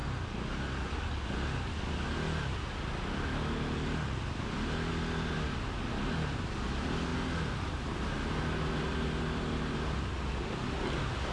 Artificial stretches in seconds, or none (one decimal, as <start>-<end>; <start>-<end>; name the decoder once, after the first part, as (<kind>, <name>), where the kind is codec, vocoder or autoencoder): none